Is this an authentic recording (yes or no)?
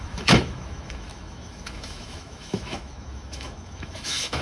no